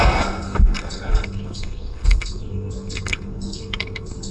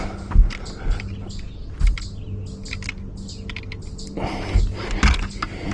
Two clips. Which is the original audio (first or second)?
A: second